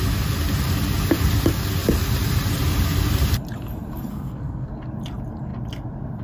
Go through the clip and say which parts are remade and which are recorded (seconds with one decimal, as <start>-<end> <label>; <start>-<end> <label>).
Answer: 0.0-4.1 recorded; 4.1-4.7 remade; 4.7-6.2 recorded